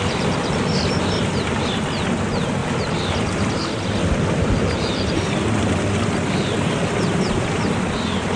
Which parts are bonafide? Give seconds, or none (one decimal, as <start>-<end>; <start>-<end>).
0.0-2.6; 3.7-4.4; 5.3-8.4